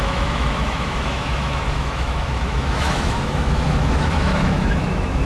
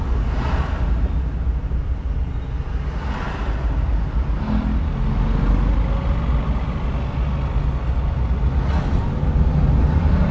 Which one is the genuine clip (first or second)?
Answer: second